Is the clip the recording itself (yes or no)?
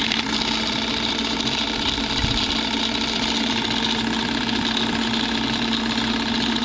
yes